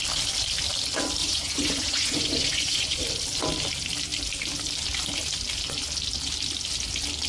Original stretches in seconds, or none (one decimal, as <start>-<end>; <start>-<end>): 0.0-1.2; 3.0-7.3